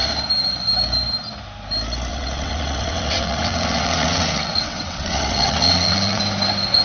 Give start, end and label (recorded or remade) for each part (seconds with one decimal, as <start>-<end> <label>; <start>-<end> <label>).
0.0-2.1 recorded; 2.1-6.2 remade; 6.2-6.8 recorded